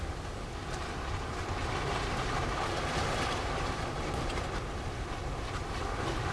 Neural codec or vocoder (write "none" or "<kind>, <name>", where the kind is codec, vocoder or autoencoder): none